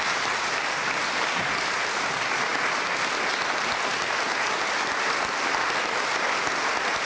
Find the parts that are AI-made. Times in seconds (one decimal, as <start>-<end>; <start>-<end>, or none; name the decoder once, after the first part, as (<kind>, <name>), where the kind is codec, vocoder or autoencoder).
none